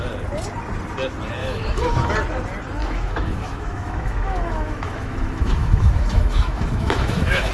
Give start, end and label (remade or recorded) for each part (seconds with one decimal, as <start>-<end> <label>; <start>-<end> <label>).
0.0-1.4 recorded; 1.4-2.1 remade; 2.1-2.8 recorded; 2.8-7.5 remade